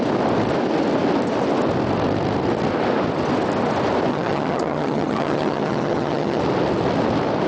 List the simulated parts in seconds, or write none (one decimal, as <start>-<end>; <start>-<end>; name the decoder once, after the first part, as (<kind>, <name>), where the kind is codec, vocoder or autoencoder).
4.1-6.4 (vocoder, HiFi-GAN)